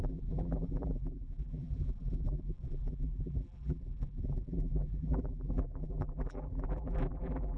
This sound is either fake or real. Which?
fake